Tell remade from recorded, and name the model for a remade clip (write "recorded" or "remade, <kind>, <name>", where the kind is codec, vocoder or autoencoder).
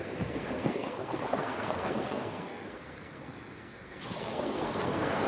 remade, codec, SNAC